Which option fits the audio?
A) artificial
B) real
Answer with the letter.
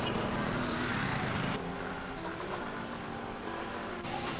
A